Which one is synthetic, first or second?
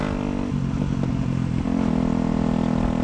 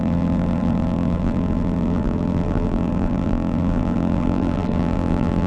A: second